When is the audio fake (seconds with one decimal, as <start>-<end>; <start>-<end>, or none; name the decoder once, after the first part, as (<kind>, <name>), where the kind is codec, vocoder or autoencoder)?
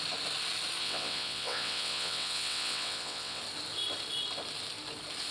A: 0.8-3.4 (vocoder, WaveNeXt)